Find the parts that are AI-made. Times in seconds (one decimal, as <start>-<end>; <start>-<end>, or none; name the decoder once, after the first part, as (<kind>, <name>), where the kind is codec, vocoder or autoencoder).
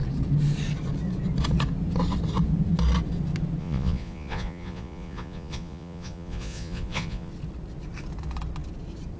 3.6-7.3 (vocoder, Vocos)